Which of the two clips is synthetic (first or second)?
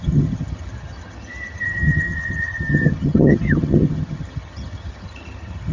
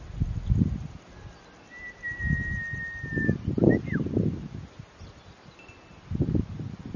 first